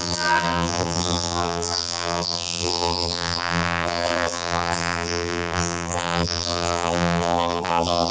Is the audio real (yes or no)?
no